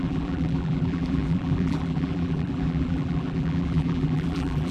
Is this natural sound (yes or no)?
no